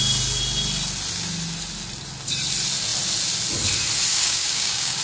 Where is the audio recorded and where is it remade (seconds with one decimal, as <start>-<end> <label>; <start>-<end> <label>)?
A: 0.0-4.1 recorded; 4.1-5.0 remade